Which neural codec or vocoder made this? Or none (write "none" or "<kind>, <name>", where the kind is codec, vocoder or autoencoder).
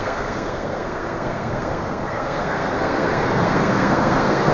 codec, SNAC